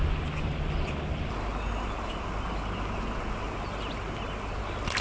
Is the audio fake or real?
real